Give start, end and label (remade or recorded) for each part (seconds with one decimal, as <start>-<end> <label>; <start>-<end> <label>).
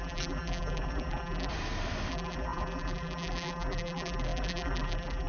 0.0-1.5 remade; 1.5-2.1 recorded; 2.1-5.3 remade